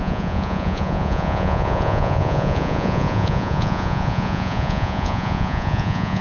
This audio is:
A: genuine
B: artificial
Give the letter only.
B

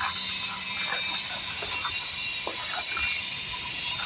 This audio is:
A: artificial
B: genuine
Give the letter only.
B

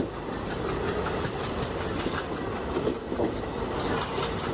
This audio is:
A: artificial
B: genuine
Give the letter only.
B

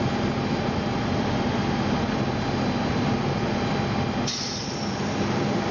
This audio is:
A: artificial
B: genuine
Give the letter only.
B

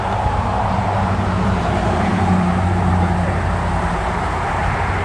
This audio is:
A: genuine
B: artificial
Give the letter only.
B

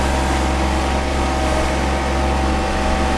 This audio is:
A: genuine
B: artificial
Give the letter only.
A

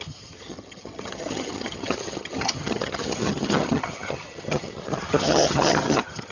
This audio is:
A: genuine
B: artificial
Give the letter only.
B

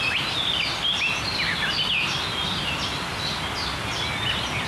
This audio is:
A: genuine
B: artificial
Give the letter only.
A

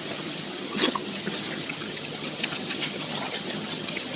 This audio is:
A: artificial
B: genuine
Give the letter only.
A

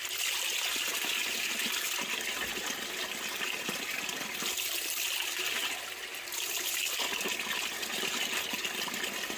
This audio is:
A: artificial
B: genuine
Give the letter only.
B